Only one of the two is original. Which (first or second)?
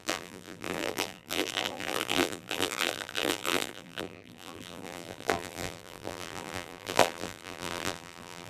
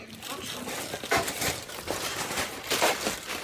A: second